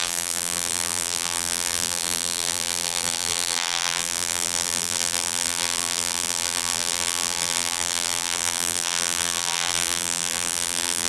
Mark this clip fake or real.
fake